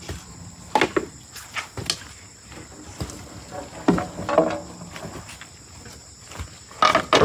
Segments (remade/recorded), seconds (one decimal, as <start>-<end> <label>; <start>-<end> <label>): 0.0-7.2 recorded